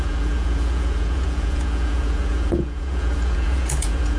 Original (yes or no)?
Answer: no